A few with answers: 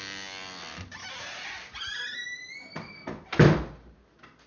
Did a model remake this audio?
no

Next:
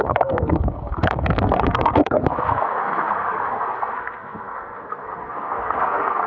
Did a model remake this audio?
yes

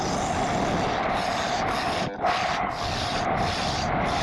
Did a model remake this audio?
no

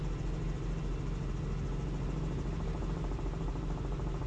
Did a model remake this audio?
no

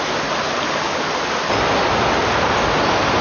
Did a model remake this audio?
no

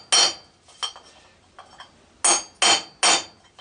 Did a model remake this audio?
no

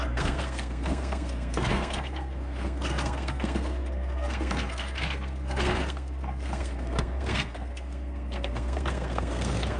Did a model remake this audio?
yes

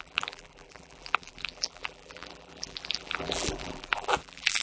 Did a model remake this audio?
yes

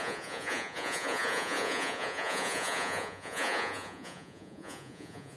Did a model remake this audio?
yes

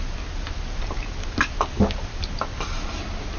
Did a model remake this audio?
no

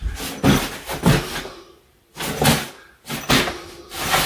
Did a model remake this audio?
no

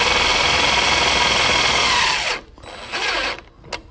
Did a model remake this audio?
no